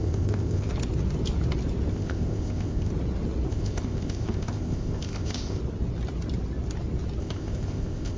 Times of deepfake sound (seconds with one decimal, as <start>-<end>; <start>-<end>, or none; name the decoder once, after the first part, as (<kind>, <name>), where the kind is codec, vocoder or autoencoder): 0.0-0.7 (codec, ZipCodec); 1.9-2.9; 3.5-5.6; 7.2-8.2